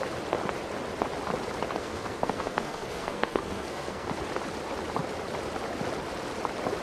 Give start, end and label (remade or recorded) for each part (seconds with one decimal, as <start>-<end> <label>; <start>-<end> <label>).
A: 0.0-1.8 recorded; 1.8-4.1 remade; 4.1-6.8 recorded